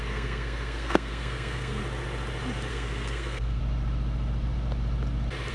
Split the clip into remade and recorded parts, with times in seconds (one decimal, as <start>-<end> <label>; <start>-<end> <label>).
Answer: 0.0-1.8 remade; 1.8-2.7 recorded; 2.7-3.6 remade; 3.6-5.5 recorded

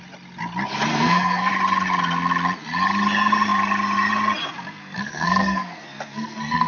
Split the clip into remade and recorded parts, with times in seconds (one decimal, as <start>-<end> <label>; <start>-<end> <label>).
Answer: 0.0-0.9 recorded; 0.9-1.5 remade; 1.5-4.8 recorded; 4.8-6.7 remade

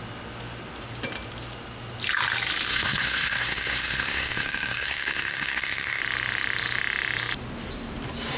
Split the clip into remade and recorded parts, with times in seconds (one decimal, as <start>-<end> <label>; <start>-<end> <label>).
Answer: 0.0-2.7 recorded; 2.7-6.0 remade; 6.0-8.4 recorded

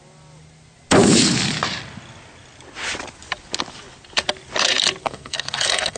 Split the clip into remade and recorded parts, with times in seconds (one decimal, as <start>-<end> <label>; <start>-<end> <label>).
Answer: 0.0-5.0 recorded; 5.0-6.0 remade